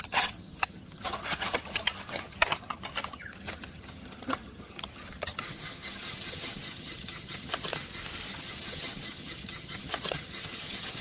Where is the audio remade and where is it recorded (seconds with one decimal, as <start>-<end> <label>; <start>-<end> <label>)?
0.0-7.7 remade; 7.7-8.3 recorded; 8.3-11.0 remade